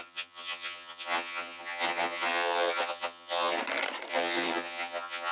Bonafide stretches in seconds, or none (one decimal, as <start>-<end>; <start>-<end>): 3.6-4.1